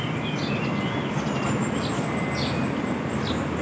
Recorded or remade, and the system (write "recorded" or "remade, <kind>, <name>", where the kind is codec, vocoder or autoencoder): recorded